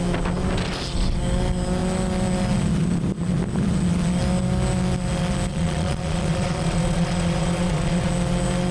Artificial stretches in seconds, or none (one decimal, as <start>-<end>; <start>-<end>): 5.5-8.1